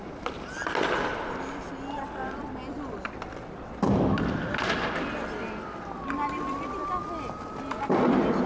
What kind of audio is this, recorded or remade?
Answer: recorded